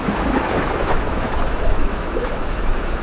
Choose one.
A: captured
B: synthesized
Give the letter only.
B